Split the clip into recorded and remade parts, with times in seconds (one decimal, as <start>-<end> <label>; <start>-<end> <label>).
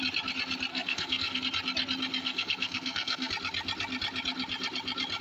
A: 0.0-0.7 recorded; 0.7-1.4 remade; 1.4-2.2 recorded; 2.2-3.3 remade; 3.3-5.2 recorded